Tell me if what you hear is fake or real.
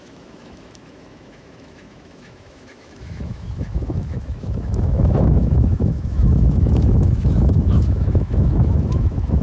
fake